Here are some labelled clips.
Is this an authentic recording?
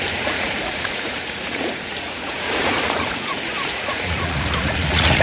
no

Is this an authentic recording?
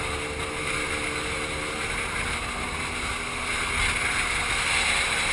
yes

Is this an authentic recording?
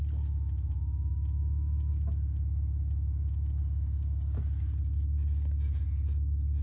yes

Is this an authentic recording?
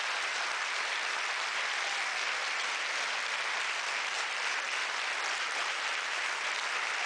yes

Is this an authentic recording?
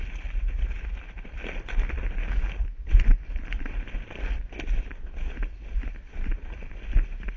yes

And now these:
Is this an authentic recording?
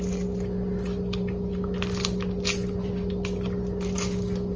yes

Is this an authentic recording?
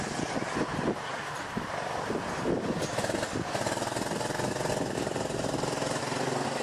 yes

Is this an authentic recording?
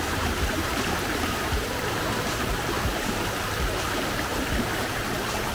no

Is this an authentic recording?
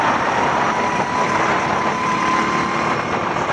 yes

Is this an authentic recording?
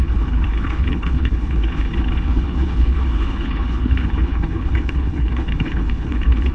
no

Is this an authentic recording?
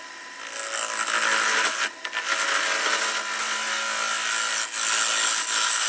yes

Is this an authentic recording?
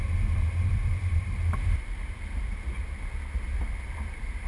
no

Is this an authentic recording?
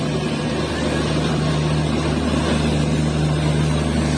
no